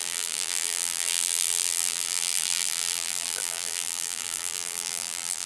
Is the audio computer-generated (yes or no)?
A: yes